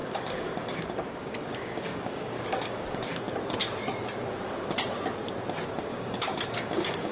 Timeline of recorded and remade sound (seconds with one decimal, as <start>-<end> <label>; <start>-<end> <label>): 0.0-3.4 remade; 3.4-5.9 recorded; 5.9-7.1 remade